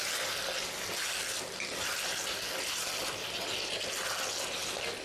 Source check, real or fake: real